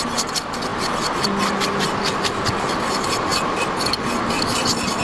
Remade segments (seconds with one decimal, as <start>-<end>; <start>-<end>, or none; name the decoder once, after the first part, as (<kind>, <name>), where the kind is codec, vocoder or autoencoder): none